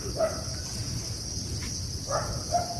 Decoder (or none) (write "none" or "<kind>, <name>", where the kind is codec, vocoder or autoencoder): none